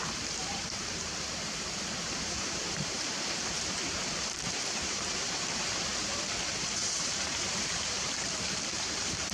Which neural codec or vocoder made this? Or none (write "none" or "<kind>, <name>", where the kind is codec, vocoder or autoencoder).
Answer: vocoder, BigVGAN v2